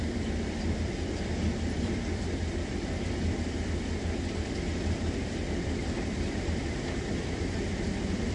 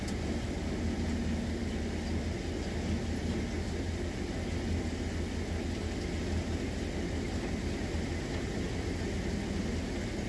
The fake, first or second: first